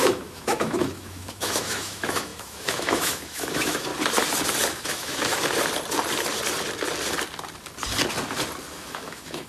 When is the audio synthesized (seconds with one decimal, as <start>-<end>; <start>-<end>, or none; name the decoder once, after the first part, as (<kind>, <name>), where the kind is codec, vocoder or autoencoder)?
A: 0.0-3.9 (autoencoder, DAC-VAE); 4.7-5.3; 8.7-9.5